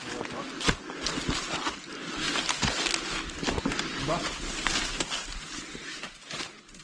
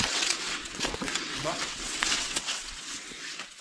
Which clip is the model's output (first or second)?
second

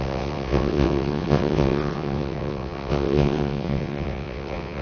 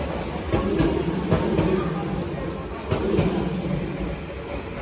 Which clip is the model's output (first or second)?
first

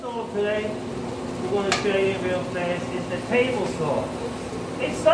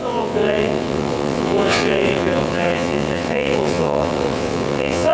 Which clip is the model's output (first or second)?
second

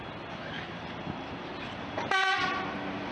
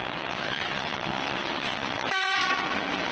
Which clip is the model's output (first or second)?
second